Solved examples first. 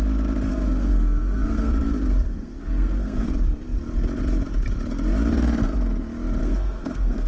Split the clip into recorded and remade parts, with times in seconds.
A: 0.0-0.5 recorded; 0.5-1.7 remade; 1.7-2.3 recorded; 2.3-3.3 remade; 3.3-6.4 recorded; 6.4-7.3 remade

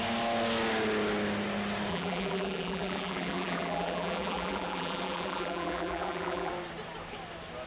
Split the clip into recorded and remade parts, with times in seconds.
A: 0.0-1.9 recorded; 1.9-6.5 remade; 6.5-7.7 recorded

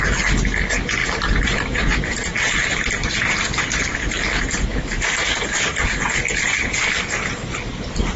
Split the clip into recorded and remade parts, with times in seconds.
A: 0.0-1.0 recorded; 1.0-5.9 remade; 5.9-8.2 recorded

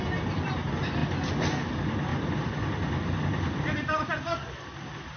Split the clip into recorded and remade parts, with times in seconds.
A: 0.0-2.1 recorded; 2.1-5.2 remade

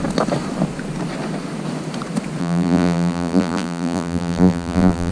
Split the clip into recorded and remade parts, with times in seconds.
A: 0.0-2.4 recorded; 2.4-5.1 remade

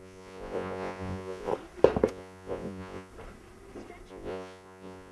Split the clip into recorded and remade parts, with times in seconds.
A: 0.0-1.5 remade; 1.5-2.1 recorded; 2.1-3.1 remade; 3.1-4.1 recorded; 4.1-5.1 remade

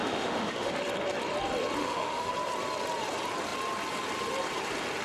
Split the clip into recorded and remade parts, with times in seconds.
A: 0.0-0.7 remade; 0.7-1.8 recorded; 1.8-2.3 remade; 2.3-5.0 recorded